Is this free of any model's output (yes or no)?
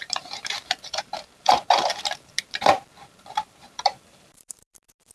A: no